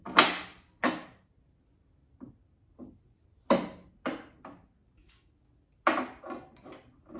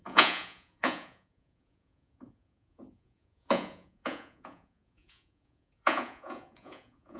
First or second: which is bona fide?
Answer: first